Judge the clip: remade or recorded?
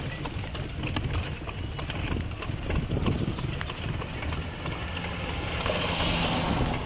recorded